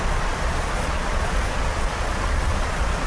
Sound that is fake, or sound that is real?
fake